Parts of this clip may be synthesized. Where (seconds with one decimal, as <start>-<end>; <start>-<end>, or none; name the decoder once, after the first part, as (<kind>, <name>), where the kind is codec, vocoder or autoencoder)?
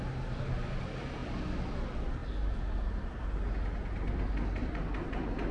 2.2-3.1 (vocoder, BigVGAN v2); 4.6-5.1